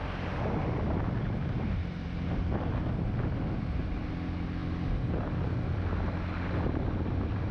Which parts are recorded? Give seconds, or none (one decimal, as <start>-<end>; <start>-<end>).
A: 0.0-7.5